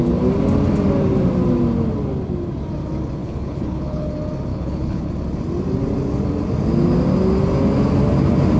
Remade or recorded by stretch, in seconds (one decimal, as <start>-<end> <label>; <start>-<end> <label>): 0.0-3.2 recorded; 3.2-4.1 remade; 4.1-4.5 recorded; 4.5-5.1 remade; 5.1-8.6 recorded